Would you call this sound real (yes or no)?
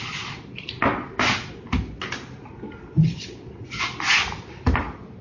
yes